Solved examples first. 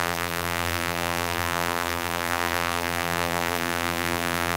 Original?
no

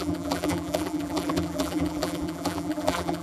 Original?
no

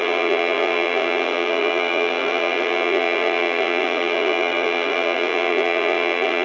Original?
no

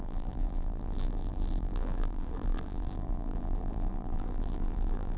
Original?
no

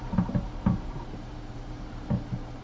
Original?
no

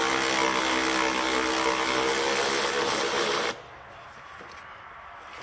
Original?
yes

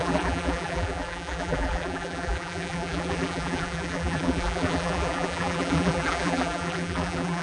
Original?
no